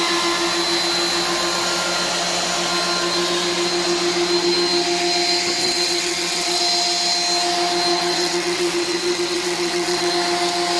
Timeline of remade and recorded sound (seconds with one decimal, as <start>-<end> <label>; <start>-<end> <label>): 0.0-5.6 recorded; 5.6-6.6 remade; 6.6-7.9 recorded; 7.9-10.1 remade; 10.1-10.8 recorded